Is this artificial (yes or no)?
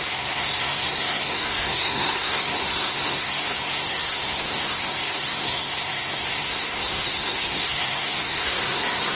yes